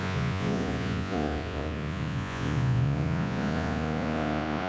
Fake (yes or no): yes